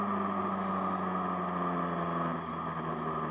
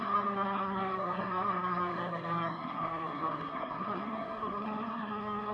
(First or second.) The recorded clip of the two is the first